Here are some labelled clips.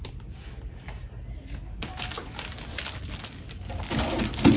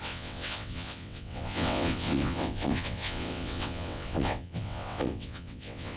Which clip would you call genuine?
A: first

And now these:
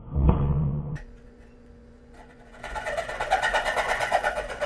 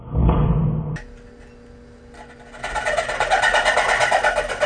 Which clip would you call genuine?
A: second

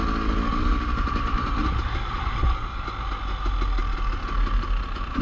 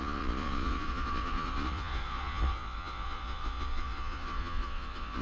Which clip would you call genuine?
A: first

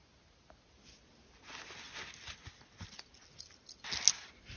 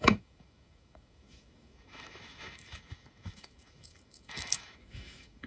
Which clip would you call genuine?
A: first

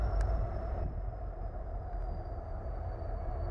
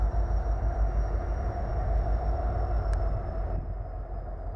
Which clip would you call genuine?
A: second